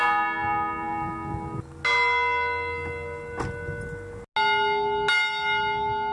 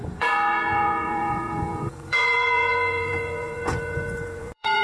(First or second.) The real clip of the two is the first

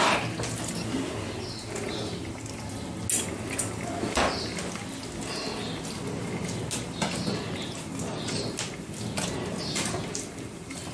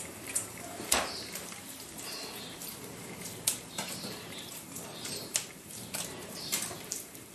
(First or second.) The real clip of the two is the first